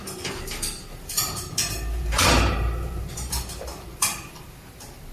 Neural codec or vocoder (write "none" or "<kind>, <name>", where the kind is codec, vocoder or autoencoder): vocoder, BigVGAN v2